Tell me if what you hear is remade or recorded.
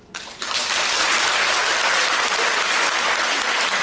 recorded